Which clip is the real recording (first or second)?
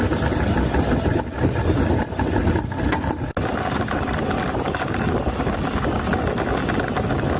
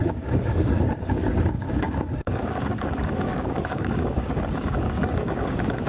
first